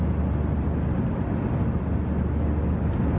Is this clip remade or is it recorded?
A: recorded